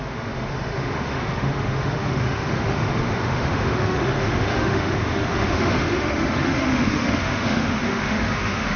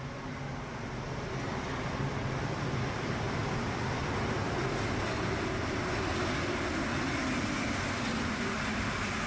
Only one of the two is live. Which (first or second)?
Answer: second